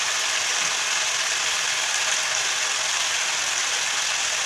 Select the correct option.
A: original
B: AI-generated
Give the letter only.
A